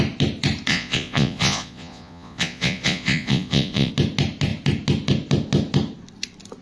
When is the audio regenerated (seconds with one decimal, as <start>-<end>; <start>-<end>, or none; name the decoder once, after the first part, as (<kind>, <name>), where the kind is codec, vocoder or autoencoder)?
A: 0.7-3.9 (vocoder, Vocos)